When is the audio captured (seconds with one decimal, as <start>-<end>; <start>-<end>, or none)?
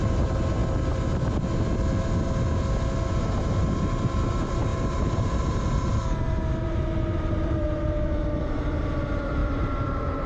0.6-3.2